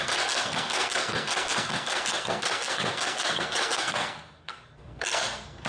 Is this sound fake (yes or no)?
yes